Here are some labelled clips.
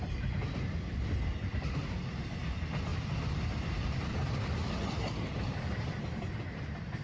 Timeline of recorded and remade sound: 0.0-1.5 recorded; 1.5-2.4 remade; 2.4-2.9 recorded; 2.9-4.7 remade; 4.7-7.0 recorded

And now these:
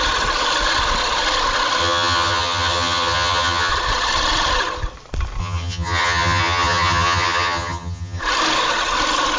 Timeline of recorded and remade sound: 0.0-1.8 recorded; 1.8-3.7 remade; 3.7-5.4 recorded; 5.4-8.2 remade; 8.2-9.4 recorded

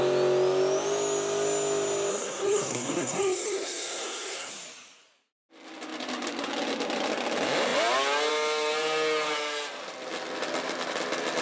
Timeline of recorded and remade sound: 0.0-2.1 recorded; 2.1-4.5 remade; 4.5-11.4 recorded